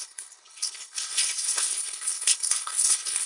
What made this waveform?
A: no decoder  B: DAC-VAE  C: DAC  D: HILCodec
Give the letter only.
D